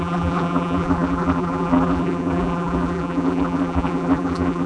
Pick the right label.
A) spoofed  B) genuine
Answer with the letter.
A